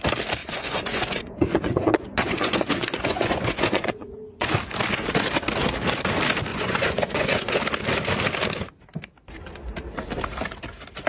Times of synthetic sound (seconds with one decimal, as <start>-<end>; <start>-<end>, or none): 0.4-4.5; 6.5-7.6